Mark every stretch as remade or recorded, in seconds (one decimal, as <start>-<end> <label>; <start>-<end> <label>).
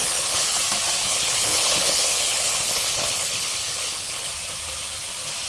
0.0-0.6 remade; 0.6-1.0 recorded; 1.0-4.3 remade; 4.3-5.5 recorded